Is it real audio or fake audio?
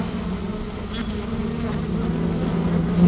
real